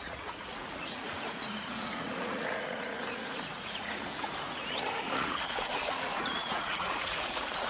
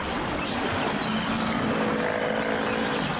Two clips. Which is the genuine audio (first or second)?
second